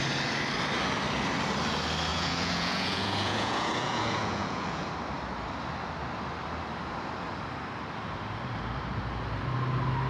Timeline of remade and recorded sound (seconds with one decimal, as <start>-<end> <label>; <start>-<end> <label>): 0.0-2.1 recorded; 2.1-4.9 remade; 4.9-10.1 recorded